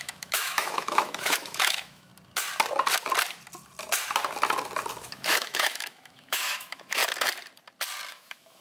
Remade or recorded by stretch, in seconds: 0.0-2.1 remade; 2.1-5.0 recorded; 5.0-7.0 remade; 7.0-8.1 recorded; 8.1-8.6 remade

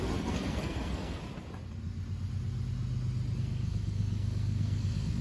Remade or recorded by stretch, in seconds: 0.0-1.2 remade; 1.2-3.4 recorded; 3.4-5.2 remade

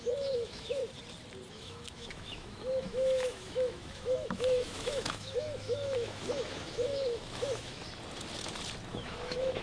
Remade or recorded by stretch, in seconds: 0.0-0.8 remade; 0.8-1.5 recorded; 1.5-7.8 remade; 7.8-8.9 recorded; 8.9-9.6 remade

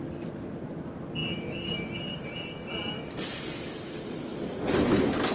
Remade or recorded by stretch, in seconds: 0.0-1.2 recorded; 1.2-2.5 remade; 2.5-4.3 recorded; 4.3-5.3 remade